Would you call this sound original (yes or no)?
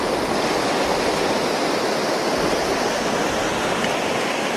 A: yes